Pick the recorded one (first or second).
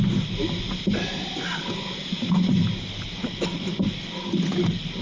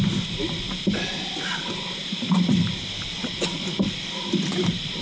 first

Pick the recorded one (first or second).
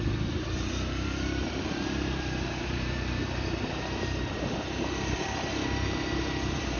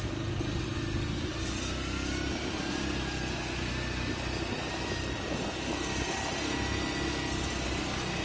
second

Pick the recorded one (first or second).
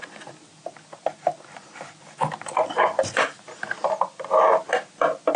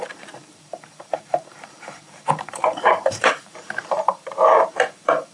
first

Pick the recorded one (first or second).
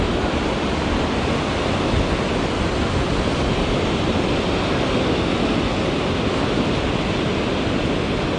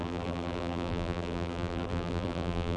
first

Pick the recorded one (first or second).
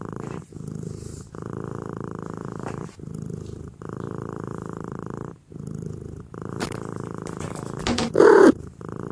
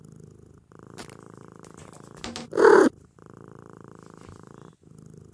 second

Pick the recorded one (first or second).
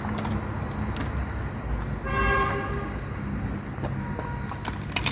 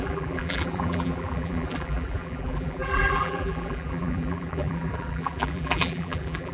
first